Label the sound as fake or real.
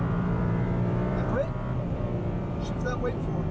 fake